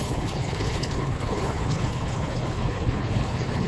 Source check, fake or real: fake